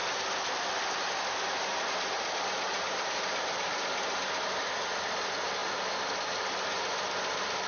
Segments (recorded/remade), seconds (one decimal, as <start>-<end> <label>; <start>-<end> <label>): 0.0-7.7 recorded